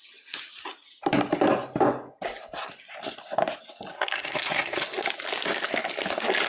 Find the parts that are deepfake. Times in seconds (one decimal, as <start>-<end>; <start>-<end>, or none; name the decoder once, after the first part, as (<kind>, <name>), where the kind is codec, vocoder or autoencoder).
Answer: 3.9-4.8 (codec, SNAC)